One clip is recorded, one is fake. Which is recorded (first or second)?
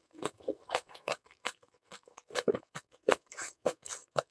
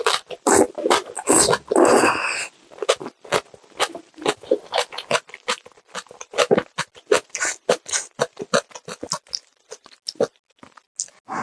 second